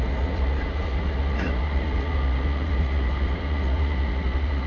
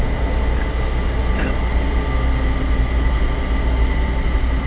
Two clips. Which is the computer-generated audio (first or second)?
first